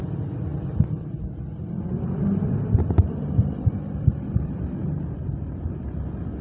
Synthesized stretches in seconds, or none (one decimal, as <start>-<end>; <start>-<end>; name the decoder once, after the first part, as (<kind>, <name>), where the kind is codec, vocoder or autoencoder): none